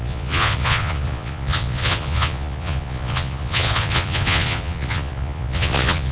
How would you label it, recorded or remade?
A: remade